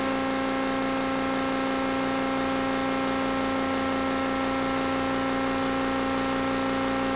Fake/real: real